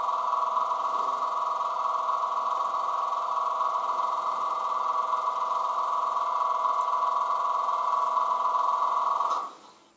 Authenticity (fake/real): real